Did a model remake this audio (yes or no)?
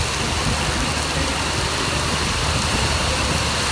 no